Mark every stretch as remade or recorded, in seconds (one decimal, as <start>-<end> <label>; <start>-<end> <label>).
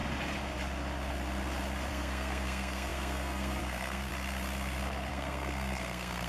0.0-1.9 recorded; 1.9-4.1 remade; 4.1-5.1 recorded; 5.1-6.3 remade